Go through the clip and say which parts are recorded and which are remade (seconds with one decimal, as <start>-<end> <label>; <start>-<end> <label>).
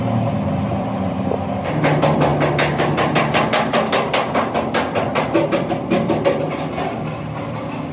0.0-7.9 recorded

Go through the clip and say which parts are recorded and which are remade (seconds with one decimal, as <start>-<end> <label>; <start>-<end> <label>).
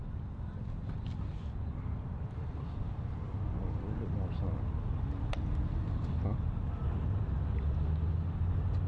0.0-8.9 recorded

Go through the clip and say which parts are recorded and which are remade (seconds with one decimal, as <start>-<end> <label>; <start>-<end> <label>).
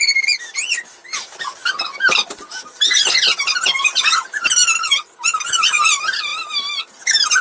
0.0-7.4 recorded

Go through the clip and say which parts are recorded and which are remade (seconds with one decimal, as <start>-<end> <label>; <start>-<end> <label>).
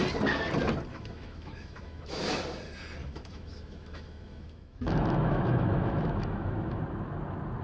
0.0-0.9 recorded; 0.9-2.4 remade; 2.4-3.0 recorded; 3.0-6.8 remade; 6.8-7.6 recorded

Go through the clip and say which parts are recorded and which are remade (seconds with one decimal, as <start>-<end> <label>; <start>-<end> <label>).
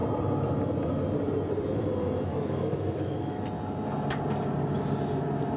0.0-2.3 recorded; 2.3-3.4 remade; 3.4-5.6 recorded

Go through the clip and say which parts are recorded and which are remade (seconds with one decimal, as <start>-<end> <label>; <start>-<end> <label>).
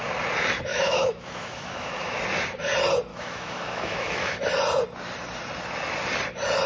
0.0-0.7 recorded; 0.7-2.2 remade; 2.2-3.1 recorded; 3.1-4.4 remade; 4.4-6.7 recorded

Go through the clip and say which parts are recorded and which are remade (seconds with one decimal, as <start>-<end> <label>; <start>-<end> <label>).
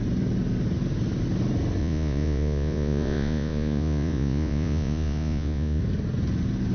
0.0-1.8 recorded; 1.8-5.8 remade; 5.8-6.7 recorded